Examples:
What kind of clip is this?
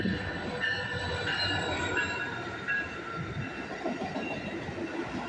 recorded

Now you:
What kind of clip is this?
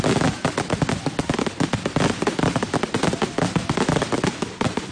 recorded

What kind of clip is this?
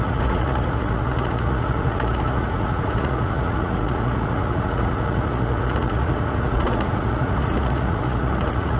remade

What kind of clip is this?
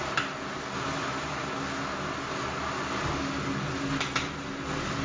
recorded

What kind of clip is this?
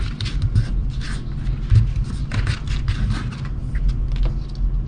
recorded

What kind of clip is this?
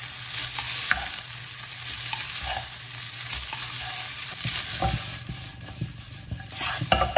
recorded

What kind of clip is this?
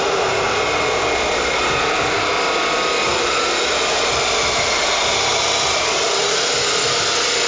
recorded